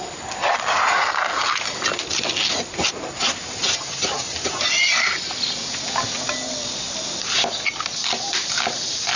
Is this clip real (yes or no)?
yes